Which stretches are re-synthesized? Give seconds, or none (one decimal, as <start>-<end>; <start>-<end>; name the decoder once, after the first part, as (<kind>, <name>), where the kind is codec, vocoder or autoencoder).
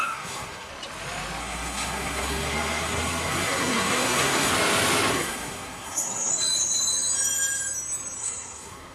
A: 0.0-0.7 (codec, SNAC); 1.4-4.5; 5.1-6.3; 8.2-8.9